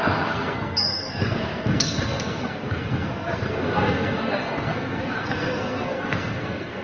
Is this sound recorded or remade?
remade